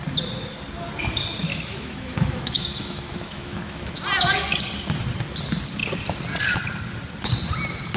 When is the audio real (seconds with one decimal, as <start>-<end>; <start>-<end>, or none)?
0.0-1.5; 4.0-8.0